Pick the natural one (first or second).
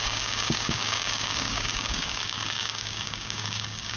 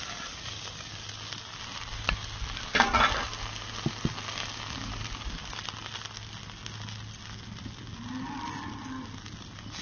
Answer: second